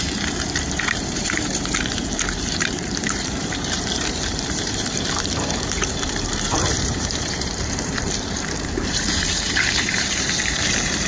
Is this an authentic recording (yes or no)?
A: no